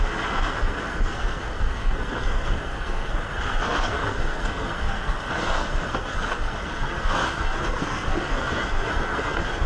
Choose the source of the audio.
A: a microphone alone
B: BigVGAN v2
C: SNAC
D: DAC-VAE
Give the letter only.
C